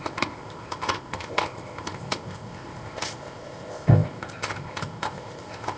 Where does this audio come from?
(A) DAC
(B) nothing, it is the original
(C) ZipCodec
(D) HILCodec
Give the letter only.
C